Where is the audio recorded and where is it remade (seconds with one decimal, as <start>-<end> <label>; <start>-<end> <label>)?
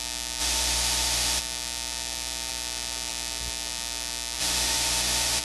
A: 0.0-0.4 recorded; 0.4-1.4 remade; 1.4-4.4 recorded; 4.4-5.4 remade